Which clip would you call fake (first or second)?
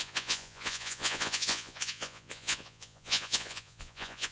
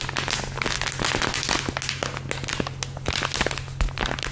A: first